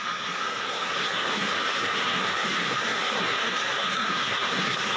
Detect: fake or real fake